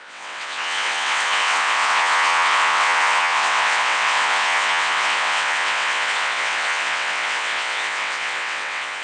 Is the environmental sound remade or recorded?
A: remade